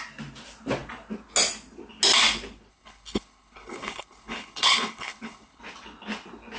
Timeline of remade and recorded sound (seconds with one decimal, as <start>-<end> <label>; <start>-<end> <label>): 0.0-2.7 recorded; 2.7-5.6 remade; 5.6-6.6 recorded